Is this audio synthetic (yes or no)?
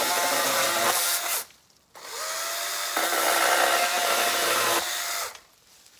no